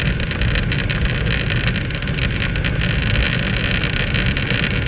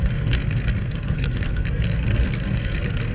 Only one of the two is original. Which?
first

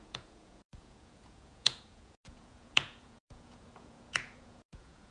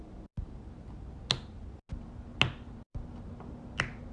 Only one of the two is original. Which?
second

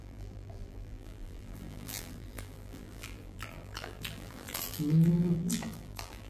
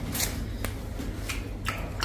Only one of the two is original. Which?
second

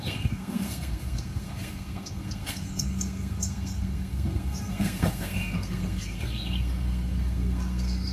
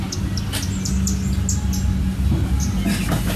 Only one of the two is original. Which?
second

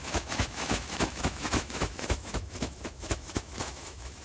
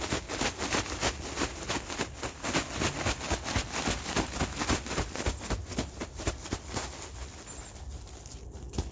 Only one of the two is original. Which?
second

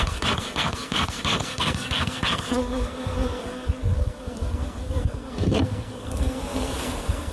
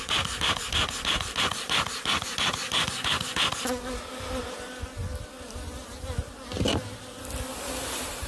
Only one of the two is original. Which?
second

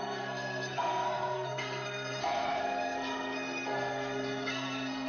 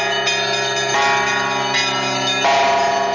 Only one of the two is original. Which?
second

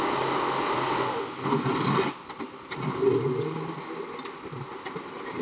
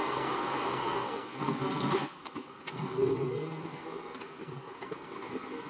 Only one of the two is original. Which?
first